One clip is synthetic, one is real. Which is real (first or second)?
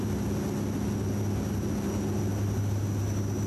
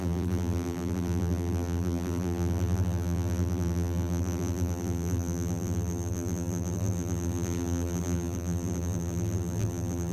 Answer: first